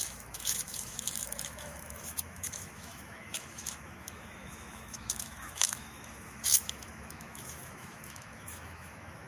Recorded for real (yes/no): no